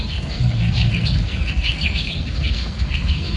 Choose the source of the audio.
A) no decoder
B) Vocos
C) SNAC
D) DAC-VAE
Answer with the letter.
C